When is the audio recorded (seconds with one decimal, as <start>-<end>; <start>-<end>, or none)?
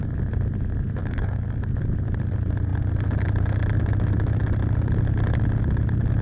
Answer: 0.0-1.0; 1.6-6.2